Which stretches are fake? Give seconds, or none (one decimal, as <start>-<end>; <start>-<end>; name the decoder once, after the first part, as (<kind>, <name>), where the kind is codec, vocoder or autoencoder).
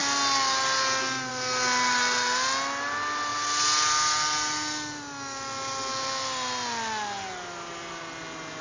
none